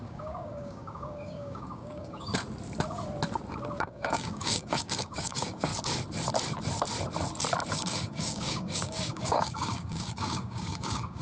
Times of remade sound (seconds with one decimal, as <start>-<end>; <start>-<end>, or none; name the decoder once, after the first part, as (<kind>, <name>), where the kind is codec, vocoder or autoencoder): 0.0-2.3 (codec, DAC); 3.8-5.7; 7.7-11.2